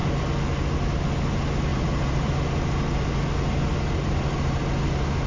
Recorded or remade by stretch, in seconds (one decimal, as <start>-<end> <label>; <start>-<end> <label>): 0.0-1.7 recorded; 1.7-2.3 remade; 2.3-3.7 recorded; 3.7-4.6 remade; 4.6-5.3 recorded